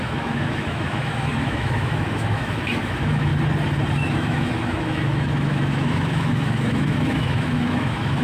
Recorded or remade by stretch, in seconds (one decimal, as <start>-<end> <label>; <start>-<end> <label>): 0.0-3.3 remade; 3.3-3.9 recorded; 3.9-8.2 remade